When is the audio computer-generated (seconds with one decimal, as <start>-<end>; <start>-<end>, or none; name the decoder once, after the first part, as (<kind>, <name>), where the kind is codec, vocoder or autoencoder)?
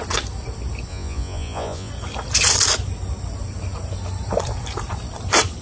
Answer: 0.9-1.9 (vocoder, Vocos)